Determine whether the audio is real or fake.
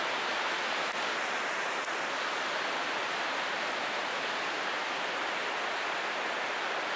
real